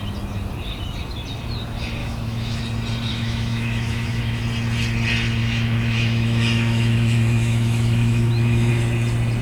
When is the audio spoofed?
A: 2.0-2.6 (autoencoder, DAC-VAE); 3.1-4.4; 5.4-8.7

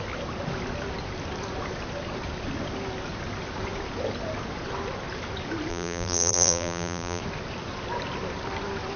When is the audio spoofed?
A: 5.7-7.2 (vocoder, BigVGAN v2)

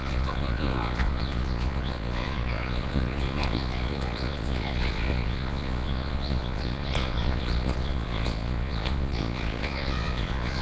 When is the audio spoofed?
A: 0.0-10.6 (vocoder, Vocos)

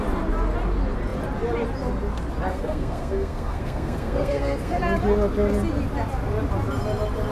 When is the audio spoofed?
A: 2.5-4.8 (codec, SNAC)

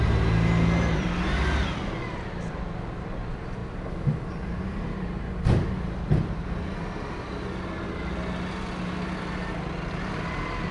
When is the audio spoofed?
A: none

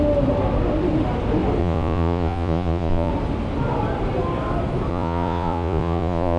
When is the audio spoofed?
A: 1.6-3.1 (vocoder, Vocos); 4.9-6.4